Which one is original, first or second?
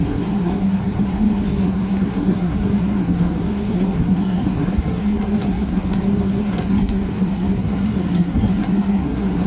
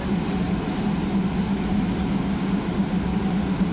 second